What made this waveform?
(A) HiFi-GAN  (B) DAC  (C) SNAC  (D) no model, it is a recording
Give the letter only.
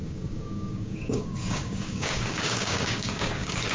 B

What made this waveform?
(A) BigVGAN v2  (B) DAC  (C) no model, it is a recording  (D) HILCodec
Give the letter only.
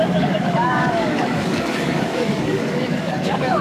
B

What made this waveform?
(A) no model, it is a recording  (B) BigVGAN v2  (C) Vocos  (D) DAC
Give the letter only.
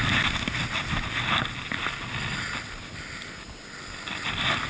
A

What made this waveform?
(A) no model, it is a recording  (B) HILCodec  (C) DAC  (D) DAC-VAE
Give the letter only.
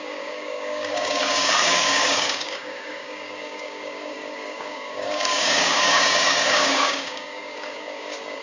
C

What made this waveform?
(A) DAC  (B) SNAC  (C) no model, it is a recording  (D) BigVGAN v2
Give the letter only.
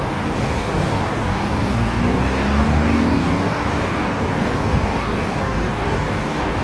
A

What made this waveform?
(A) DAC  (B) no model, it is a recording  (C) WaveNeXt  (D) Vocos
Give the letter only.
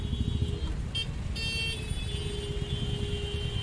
B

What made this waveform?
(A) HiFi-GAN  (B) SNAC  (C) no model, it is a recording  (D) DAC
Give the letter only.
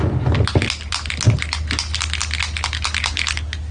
C